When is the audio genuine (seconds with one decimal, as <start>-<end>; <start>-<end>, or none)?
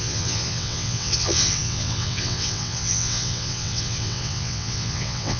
none